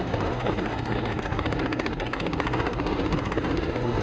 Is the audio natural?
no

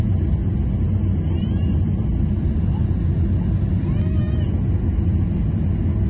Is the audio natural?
yes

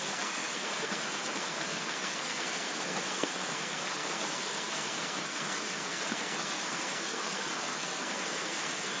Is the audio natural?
no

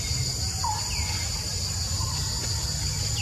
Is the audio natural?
yes